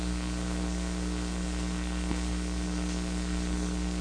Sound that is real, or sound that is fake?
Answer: fake